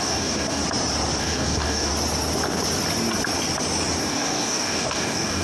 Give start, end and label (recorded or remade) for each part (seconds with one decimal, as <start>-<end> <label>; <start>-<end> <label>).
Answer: 0.0-0.6 remade; 0.6-1.2 recorded; 1.2-1.9 remade; 1.9-4.0 recorded; 4.0-5.4 remade

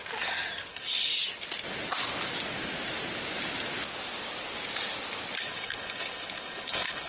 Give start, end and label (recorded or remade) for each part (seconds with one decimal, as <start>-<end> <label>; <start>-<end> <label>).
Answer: 0.0-0.7 recorded; 0.7-1.1 remade; 1.1-5.4 recorded; 5.4-7.1 remade

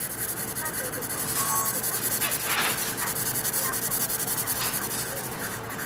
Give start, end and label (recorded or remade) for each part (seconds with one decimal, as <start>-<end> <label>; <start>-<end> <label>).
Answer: 0.0-5.2 recorded; 5.2-5.9 remade

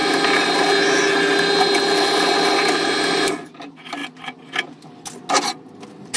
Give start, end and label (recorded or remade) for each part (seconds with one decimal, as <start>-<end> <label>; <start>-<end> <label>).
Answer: 0.0-6.2 recorded

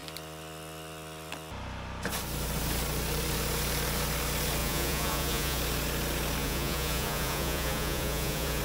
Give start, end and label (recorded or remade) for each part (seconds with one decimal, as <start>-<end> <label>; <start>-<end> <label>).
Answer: 0.0-4.6 recorded; 4.6-5.6 remade; 5.6-6.4 recorded; 6.4-8.6 remade

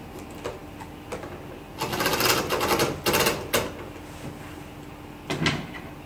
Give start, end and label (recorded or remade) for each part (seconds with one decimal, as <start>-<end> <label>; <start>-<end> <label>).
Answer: 0.0-6.1 recorded

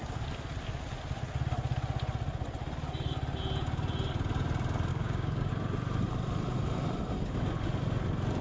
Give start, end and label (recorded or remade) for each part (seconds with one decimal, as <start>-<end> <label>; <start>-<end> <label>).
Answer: 0.0-4.9 recorded; 4.9-5.5 remade; 5.5-8.4 recorded